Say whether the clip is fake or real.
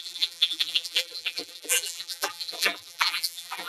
fake